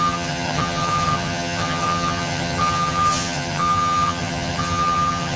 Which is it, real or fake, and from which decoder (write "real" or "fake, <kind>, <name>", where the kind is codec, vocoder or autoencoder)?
fake, vocoder, HiFi-GAN